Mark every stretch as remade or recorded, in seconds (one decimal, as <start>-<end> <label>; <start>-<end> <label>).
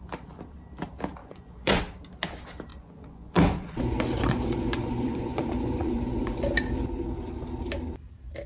0.0-1.2 recorded; 1.2-1.8 remade; 1.8-2.7 recorded; 2.7-6.4 remade; 6.4-8.5 recorded